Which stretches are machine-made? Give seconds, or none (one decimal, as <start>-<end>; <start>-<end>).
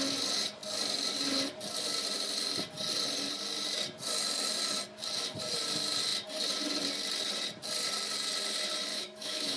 8.9-9.6